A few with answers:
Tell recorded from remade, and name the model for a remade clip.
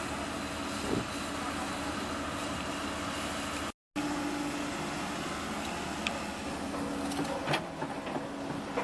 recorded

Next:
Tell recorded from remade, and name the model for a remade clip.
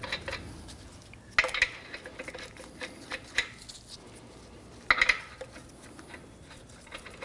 recorded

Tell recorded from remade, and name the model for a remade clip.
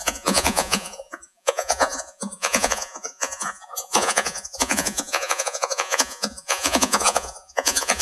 remade, vocoder, Vocos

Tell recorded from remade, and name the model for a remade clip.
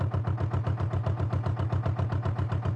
recorded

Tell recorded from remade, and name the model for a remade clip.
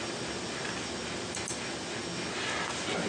recorded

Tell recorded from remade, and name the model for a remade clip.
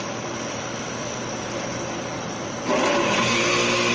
remade, vocoder, BigVGAN v2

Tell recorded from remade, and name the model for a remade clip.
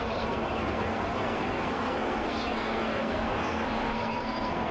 remade, codec, SNAC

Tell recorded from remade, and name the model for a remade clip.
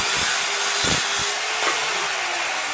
remade, vocoder, BigVGAN v2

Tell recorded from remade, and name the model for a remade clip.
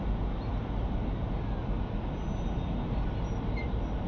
recorded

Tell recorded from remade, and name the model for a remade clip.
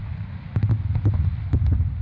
recorded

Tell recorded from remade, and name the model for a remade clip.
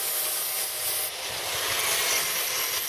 recorded